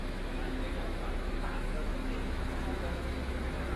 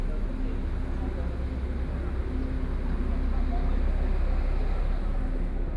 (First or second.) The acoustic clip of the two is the second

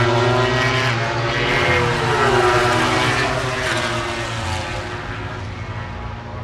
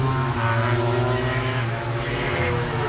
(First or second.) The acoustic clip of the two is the first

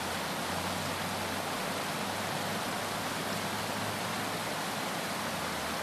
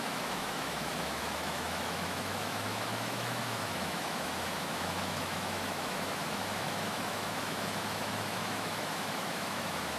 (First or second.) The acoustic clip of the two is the first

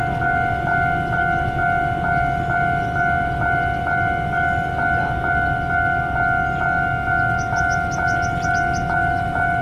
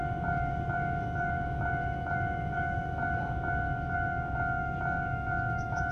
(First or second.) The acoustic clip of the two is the first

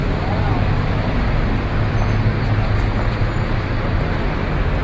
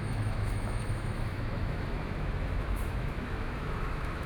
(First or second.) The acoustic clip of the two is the first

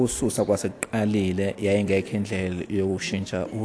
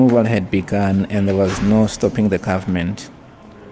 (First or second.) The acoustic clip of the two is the first